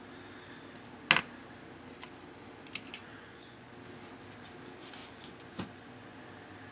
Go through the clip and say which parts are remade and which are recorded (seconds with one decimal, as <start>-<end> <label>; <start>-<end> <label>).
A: 0.0-3.0 recorded; 3.0-3.7 remade; 3.7-5.0 recorded; 5.0-6.2 remade; 6.2-6.7 recorded